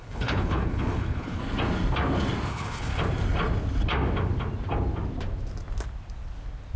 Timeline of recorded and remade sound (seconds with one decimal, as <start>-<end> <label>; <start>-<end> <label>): 0.0-1.4 remade; 1.4-2.5 recorded; 2.5-2.9 remade; 2.9-6.8 recorded